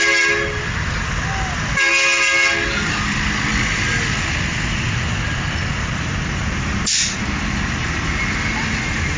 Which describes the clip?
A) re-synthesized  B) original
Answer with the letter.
B